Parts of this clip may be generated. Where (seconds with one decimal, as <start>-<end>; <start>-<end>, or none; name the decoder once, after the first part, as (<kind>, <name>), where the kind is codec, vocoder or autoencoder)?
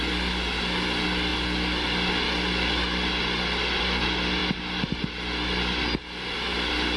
none